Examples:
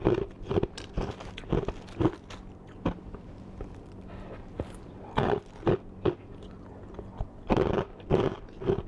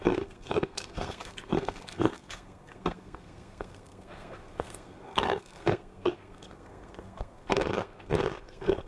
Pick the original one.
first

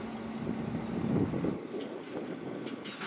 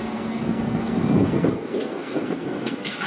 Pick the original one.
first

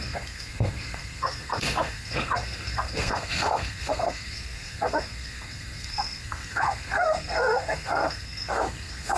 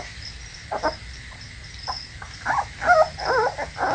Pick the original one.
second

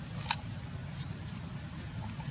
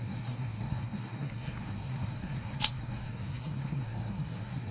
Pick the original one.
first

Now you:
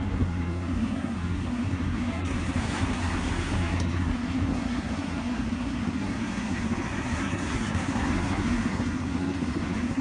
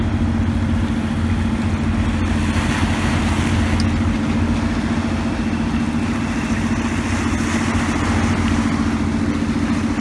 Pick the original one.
second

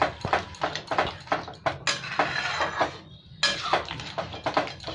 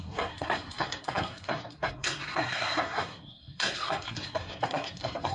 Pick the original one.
first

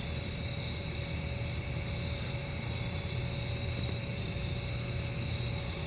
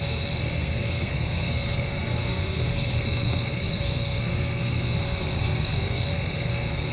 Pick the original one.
first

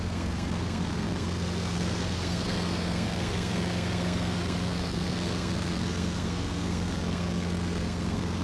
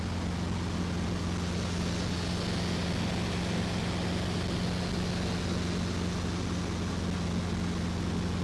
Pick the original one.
second